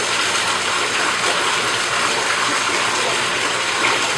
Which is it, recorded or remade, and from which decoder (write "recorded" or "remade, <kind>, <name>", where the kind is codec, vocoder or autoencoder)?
recorded